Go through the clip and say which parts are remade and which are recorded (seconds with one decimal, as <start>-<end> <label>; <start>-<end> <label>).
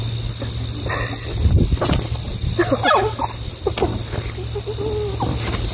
0.0-5.7 recorded